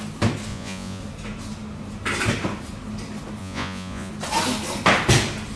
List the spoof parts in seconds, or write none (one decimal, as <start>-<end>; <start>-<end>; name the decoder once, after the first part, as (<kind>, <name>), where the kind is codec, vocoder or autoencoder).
0.5-1.0 (vocoder, Vocos); 3.4-4.1